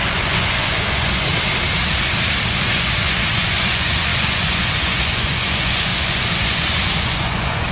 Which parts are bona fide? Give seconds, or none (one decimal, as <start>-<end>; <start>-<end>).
1.3-2.5